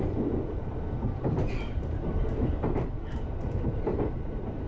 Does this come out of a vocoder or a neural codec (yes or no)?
yes